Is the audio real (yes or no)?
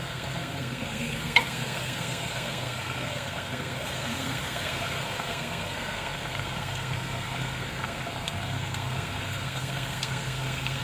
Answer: no